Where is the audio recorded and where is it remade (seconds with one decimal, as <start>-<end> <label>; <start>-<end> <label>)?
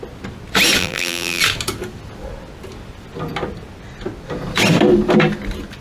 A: 0.0-0.8 recorded; 0.8-1.4 remade; 1.4-5.8 recorded